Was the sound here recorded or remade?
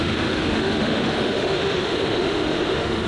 remade